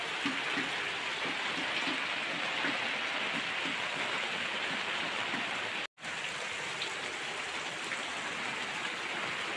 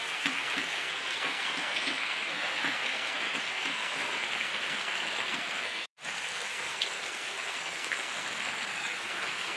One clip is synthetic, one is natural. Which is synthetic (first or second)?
second